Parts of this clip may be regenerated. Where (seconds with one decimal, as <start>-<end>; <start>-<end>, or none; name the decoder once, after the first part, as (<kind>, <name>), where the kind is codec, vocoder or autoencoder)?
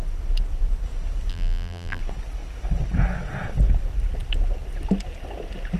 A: 1.3-2.0 (vocoder, BigVGAN v2)